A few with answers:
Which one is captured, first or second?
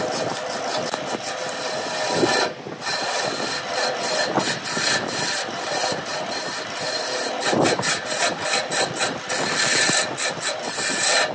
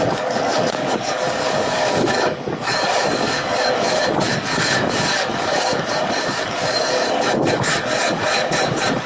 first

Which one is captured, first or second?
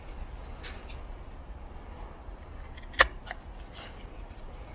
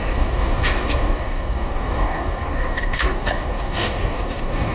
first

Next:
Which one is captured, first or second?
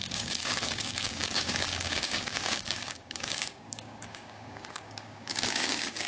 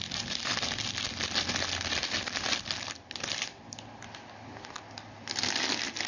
second